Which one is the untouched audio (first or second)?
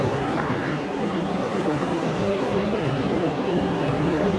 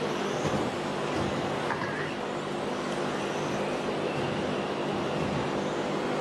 second